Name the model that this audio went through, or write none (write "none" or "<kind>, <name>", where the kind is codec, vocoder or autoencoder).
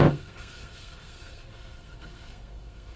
codec, SNAC